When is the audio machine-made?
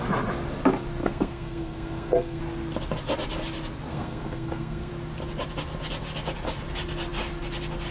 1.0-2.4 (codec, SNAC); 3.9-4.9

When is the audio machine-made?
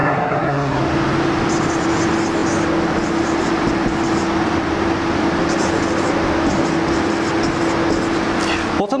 0.0-0.8 (codec, SNAC)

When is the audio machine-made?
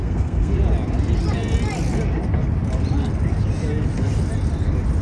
0.0-0.5 (codec, SNAC)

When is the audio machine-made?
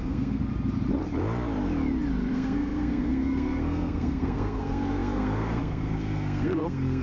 0.0-0.4 (codec, SNAC); 2.3-7.0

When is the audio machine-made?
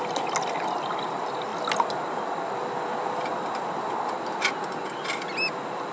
none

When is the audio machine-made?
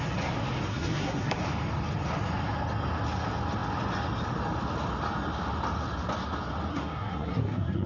0.7-1.4 (codec, SNAC); 6.7-7.9